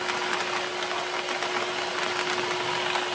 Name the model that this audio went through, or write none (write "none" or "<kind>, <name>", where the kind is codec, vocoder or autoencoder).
none